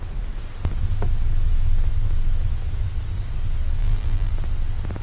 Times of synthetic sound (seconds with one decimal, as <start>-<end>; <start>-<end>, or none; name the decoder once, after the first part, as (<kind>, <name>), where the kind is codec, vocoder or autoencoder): 3.8-4.3 (vocoder, BigVGAN v2)

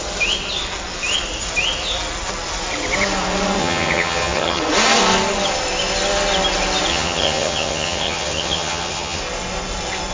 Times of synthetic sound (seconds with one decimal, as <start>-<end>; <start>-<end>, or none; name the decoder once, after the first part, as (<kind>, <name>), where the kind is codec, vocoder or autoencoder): 3.6-4.6 (vocoder, HiFi-GAN); 6.9-9.2

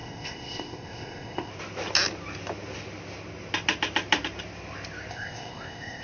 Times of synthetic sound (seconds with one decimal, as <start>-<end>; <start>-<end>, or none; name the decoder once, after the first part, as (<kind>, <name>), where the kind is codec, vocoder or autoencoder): 0.0-1.5 (codec, ZipCodec); 5.1-6.0

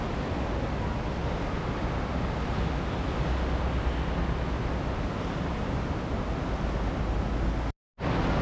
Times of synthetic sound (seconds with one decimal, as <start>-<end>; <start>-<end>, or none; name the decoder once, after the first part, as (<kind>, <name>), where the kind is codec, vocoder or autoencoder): none

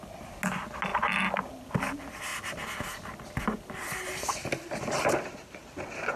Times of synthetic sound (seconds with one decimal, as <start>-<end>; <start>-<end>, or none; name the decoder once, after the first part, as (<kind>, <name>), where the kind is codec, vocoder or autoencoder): none

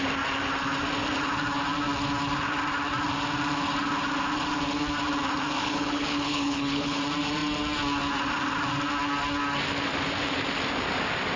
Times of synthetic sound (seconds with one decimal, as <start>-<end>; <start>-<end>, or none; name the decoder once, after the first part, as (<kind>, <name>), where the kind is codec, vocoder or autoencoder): 5.6-7.0 (codec, HILCodec)

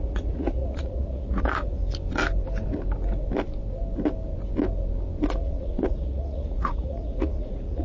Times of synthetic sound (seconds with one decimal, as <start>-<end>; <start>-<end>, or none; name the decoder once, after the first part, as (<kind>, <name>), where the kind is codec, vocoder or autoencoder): 0.0-1.8 (vocoder, Vocos); 5.4-7.8

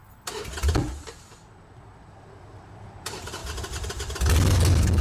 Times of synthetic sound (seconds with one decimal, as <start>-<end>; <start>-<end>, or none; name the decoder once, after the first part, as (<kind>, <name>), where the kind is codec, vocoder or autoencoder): 3.0-3.4 (vocoder, BigVGAN v2)